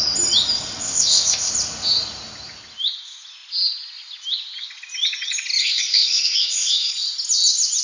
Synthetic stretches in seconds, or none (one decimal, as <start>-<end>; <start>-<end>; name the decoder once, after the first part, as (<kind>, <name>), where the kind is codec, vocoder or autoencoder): 0.8-1.5 (codec, ZipCodec); 5.6-6.9